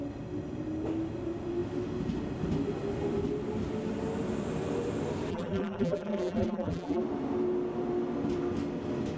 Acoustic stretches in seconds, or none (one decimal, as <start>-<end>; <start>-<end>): 0.0-5.3; 7.0-9.2